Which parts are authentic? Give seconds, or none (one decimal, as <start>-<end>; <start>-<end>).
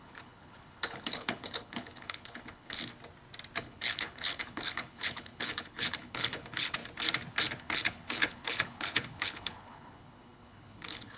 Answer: 2.9-3.6; 6.8-7.6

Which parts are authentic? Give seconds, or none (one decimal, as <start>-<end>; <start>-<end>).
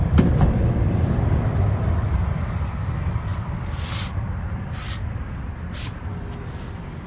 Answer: none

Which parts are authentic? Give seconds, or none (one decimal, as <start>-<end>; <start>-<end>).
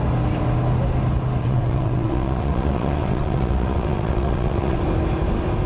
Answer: 0.0-1.4; 4.8-5.7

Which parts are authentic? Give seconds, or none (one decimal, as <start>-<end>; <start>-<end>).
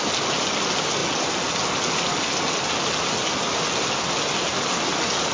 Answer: 0.0-5.3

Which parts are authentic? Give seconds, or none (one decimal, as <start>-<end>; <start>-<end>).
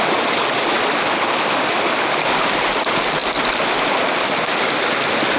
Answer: 0.0-5.4